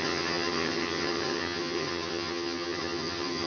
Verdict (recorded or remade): remade